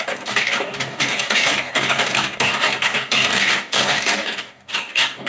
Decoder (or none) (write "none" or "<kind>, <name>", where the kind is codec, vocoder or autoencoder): codec, DAC